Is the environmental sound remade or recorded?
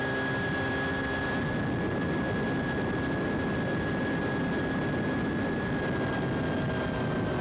recorded